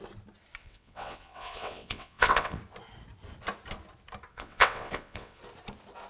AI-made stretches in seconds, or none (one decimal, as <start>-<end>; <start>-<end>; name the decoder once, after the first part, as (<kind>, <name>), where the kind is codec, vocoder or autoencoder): 0.6-2.6 (vocoder, WaveNeXt); 4.3-5.4

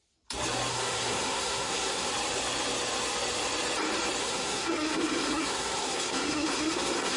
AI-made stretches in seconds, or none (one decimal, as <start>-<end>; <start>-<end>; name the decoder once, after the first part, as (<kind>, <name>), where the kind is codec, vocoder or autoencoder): 0.7-2.1 (codec, SNAC); 4.2-7.2

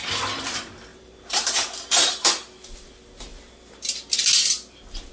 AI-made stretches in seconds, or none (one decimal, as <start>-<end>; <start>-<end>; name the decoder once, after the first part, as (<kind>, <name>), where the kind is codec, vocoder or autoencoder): 0.9-2.1 (vocoder, BigVGAN v2)

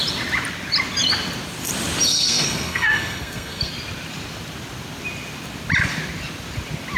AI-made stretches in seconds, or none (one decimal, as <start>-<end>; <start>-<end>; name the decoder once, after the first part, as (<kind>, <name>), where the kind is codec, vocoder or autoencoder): 2.1-3.7 (codec, SNAC)

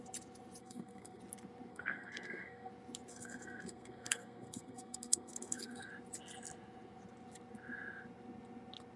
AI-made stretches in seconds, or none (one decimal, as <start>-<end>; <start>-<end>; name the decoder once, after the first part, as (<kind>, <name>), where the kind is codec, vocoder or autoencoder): 0.6-1.2 (codec, SNAC); 1.7-2.7; 3.1-5.9